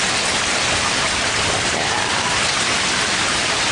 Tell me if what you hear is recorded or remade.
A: recorded